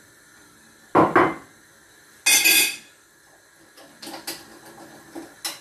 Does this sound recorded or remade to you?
recorded